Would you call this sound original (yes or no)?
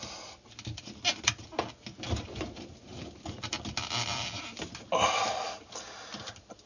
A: yes